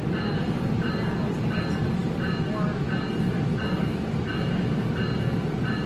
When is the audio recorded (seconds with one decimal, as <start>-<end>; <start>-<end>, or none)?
0.0-5.9